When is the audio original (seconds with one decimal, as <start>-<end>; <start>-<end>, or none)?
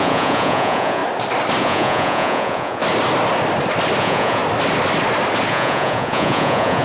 1.0-1.6; 2.8-4.0; 4.4-5.5